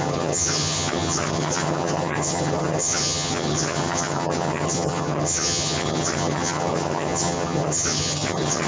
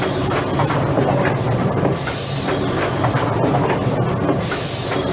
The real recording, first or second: second